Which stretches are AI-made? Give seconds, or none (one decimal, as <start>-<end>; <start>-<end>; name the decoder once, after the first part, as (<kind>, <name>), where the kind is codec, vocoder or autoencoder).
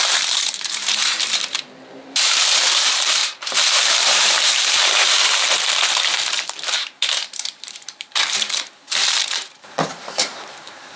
0.0-3.2 (vocoder, BigVGAN v2); 3.9-11.0